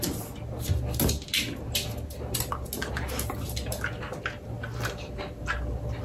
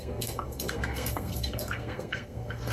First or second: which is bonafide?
first